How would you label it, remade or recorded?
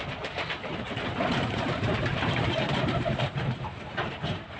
remade